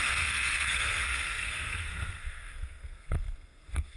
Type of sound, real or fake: fake